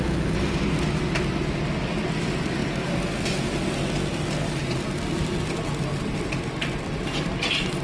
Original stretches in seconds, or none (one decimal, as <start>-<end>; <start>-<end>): 0.0-7.8